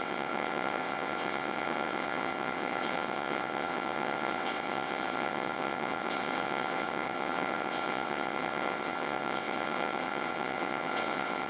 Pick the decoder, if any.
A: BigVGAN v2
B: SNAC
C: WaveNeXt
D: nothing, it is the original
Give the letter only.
C